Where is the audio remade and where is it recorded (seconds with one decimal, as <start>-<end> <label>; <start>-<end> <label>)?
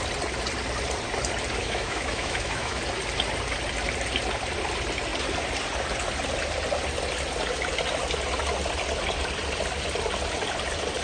0.0-1.6 recorded; 1.6-2.8 remade; 2.8-11.0 recorded